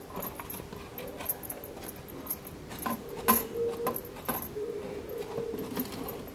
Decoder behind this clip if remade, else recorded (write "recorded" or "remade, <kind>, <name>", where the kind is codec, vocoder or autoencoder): recorded